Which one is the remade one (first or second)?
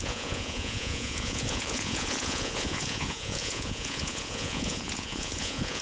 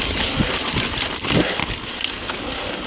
first